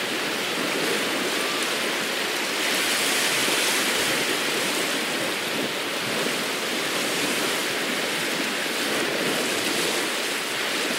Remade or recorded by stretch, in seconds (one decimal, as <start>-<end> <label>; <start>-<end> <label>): 0.0-11.0 recorded